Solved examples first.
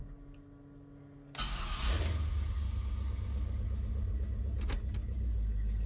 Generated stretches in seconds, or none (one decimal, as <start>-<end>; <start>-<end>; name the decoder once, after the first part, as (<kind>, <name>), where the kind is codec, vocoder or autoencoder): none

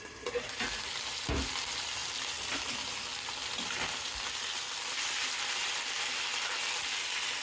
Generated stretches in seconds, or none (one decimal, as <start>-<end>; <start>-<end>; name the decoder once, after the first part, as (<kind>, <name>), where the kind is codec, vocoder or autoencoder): none

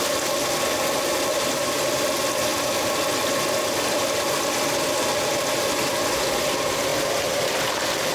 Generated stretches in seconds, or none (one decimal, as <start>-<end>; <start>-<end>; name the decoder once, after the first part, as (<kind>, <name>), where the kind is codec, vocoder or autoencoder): 2.5-4.5 (vocoder, BigVGAN v2); 6.9-8.1

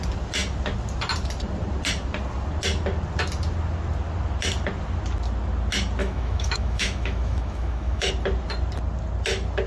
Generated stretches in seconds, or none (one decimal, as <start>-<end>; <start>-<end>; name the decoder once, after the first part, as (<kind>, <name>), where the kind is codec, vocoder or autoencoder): 6.0-8.1 (autoencoder, DAC-VAE)

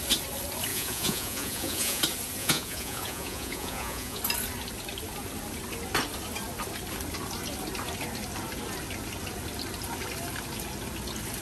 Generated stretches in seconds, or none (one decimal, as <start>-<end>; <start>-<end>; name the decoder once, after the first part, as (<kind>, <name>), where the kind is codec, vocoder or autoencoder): 0.7-2.0 (vocoder, Vocos); 2.4-4.2

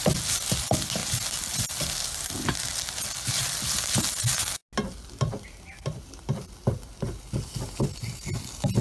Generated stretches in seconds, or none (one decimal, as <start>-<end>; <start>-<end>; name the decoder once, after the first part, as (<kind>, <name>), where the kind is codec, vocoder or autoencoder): none